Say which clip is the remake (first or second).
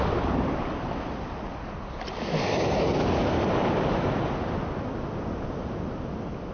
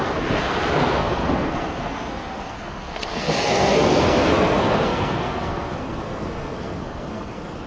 second